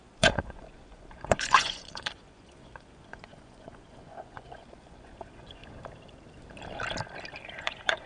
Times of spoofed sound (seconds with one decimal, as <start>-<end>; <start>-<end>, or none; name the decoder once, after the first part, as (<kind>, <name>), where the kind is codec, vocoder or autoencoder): 0.0-5.6 (vocoder, Vocos); 7.6-8.1